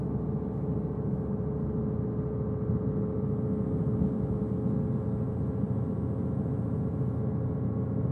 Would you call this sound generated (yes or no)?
no